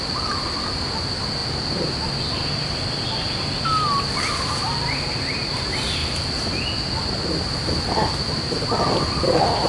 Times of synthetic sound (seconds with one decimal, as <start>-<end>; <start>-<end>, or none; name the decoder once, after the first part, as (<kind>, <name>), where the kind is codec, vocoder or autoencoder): none